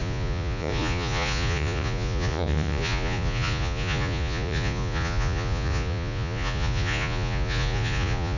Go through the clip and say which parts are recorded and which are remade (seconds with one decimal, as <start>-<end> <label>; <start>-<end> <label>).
0.0-8.4 remade